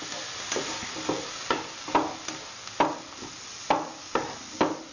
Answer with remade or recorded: recorded